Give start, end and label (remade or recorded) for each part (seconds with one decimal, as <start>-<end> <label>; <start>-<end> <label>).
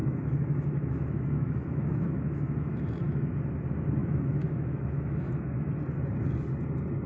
0.0-3.3 remade; 3.3-4.0 recorded; 4.0-5.7 remade; 5.7-7.1 recorded